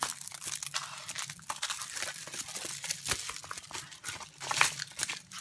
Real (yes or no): yes